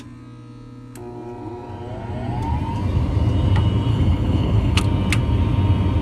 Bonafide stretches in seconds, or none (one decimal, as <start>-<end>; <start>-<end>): 0.0-3.9; 4.8-6.0